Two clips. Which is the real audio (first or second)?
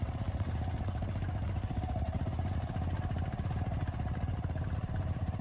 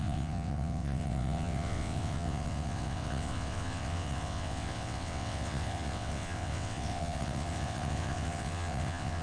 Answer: first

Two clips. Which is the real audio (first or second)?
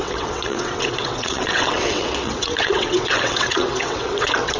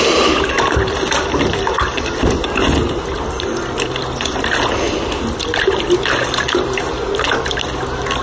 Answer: second